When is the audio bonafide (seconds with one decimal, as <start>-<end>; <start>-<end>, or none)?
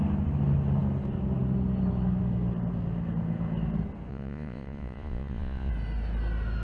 0.0-4.1; 5.7-6.6